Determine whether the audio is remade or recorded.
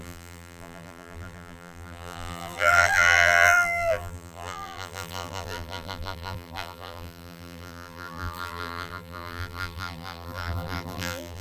remade